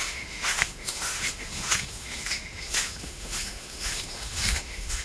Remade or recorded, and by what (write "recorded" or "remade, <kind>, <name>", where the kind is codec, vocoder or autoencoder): remade, autoencoder, DAC-VAE